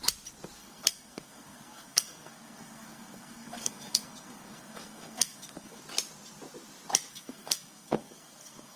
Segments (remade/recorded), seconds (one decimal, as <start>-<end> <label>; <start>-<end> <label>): 0.0-0.6 recorded; 0.6-5.8 remade; 5.8-7.1 recorded; 7.1-8.8 remade